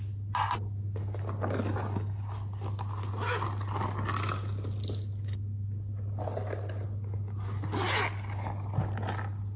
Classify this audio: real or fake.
real